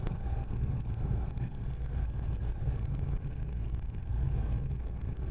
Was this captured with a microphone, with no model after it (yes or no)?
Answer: no